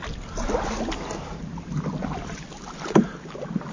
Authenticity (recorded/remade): recorded